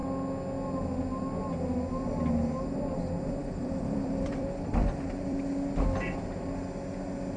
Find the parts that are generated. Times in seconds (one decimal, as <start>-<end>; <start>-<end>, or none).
3.4-5.4